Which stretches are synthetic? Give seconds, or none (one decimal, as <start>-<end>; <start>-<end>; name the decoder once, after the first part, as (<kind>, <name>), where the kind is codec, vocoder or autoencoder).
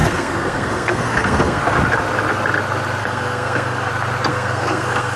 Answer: 0.0-1.6 (codec, SNAC); 3.0-3.9; 4.3-5.2